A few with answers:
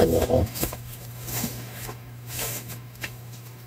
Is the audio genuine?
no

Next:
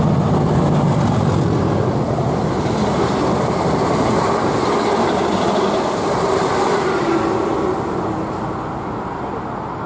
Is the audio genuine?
yes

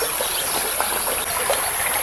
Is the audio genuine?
yes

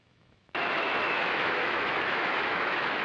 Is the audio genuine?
no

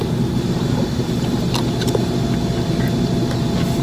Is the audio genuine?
yes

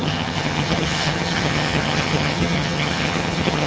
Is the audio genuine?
no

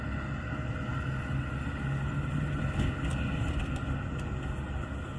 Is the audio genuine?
yes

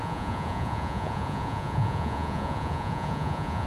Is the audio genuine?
no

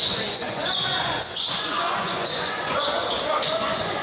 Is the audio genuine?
no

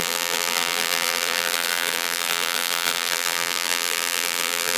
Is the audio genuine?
no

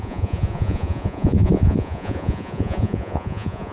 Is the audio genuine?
no